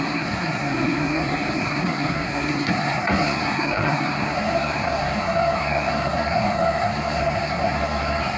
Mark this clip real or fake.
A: fake